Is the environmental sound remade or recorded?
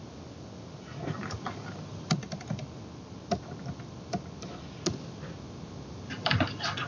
recorded